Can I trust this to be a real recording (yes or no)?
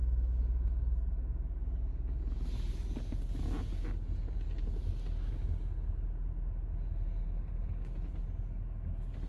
yes